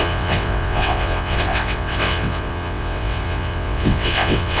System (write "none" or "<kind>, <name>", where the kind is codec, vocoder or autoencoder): vocoder, WaveNeXt